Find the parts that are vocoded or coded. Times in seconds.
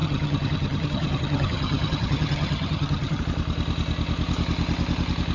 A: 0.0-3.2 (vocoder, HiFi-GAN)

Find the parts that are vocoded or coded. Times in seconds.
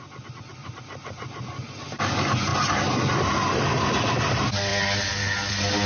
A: 0.6-1.3 (vocoder, BigVGAN v2)